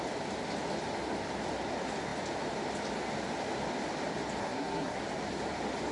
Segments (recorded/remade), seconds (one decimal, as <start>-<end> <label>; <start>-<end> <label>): 0.0-4.4 recorded; 4.4-5.0 remade; 5.0-5.9 recorded